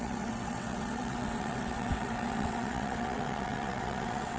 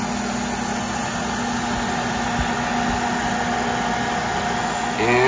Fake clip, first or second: first